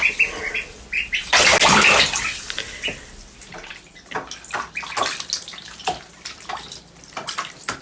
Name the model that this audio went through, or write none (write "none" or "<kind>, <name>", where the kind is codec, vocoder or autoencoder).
none